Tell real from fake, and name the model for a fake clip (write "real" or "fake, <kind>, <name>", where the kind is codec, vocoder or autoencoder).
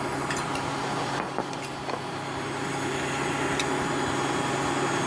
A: real